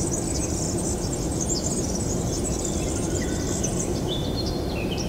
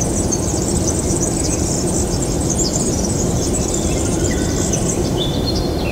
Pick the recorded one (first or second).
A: first